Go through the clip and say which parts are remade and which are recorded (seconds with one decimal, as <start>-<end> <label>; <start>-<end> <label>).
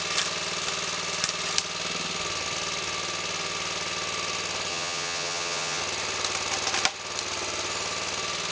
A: 0.0-4.7 recorded; 4.7-5.8 remade; 5.8-8.5 recorded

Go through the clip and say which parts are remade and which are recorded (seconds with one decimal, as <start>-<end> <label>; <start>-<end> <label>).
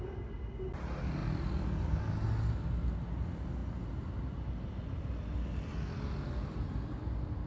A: 0.0-7.5 recorded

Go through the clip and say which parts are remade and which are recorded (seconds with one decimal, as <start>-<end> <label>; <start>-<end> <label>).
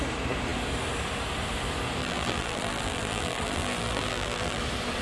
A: 0.0-2.0 recorded; 2.0-4.6 remade; 4.6-5.0 recorded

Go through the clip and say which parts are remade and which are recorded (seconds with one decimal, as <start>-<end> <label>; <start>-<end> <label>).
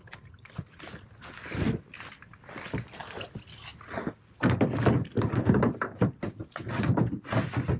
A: 0.0-7.8 recorded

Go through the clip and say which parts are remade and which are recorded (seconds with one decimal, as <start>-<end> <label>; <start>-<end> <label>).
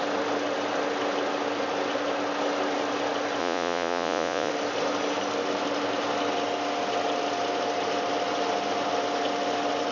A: 0.0-3.4 recorded; 3.4-4.5 remade; 4.5-9.9 recorded